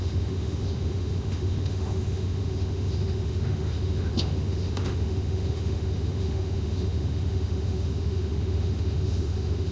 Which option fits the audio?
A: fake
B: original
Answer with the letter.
A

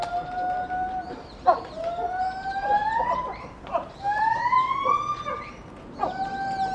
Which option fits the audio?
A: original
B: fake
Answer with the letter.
A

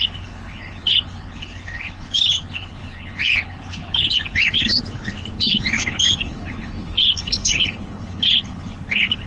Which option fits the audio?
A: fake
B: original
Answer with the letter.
A